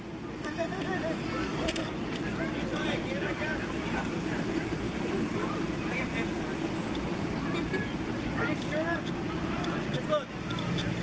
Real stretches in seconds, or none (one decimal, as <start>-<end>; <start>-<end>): 0.0-1.5; 6.1-11.0

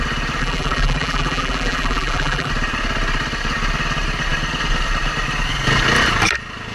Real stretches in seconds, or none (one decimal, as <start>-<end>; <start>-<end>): 0.0-0.4; 2.5-6.7